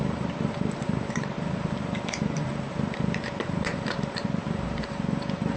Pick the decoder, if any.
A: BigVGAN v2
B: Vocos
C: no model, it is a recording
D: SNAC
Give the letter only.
A